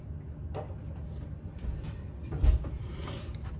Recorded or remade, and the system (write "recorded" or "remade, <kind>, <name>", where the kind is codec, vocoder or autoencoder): recorded